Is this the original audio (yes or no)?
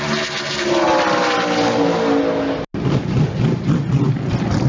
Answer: yes